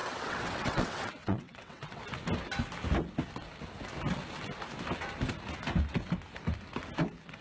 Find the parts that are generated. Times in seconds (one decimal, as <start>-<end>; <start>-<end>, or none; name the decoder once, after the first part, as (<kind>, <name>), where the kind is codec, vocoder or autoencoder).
0.0-2.0 (vocoder, WaveNeXt)